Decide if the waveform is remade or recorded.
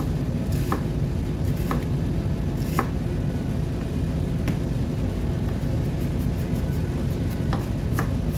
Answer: recorded